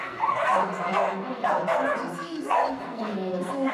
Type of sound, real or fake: fake